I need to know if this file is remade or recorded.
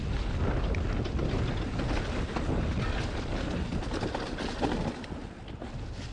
recorded